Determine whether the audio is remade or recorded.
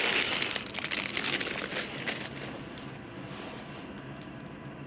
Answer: recorded